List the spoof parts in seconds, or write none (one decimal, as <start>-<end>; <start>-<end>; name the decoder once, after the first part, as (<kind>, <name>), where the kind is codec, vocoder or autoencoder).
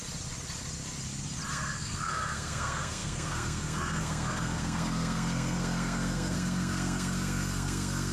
1.5-8.1 (codec, SNAC)